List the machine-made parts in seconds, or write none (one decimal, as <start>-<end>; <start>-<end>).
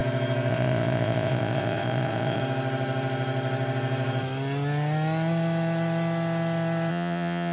0.5-2.4; 6.9-7.5